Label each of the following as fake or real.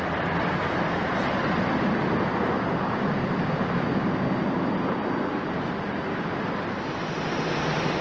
real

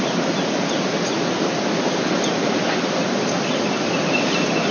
real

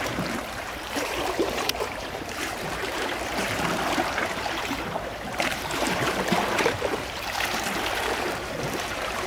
fake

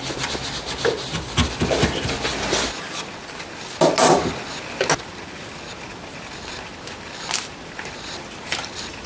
real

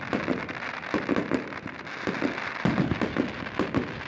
fake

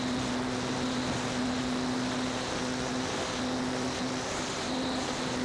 real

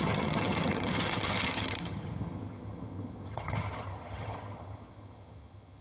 fake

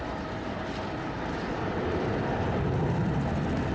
real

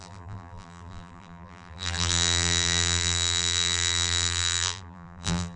fake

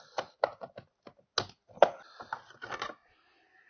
real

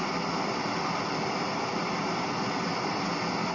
real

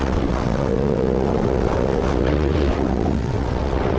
fake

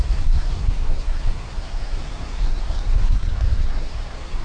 fake